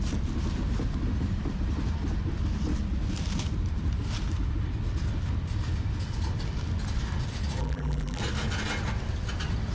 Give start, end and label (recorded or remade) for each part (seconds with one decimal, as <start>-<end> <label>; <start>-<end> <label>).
0.0-7.6 recorded; 7.6-8.2 remade; 8.2-9.7 recorded